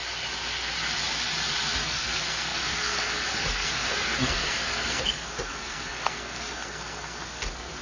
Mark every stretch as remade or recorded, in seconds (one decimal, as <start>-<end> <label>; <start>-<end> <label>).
0.0-1.8 recorded; 1.8-7.8 remade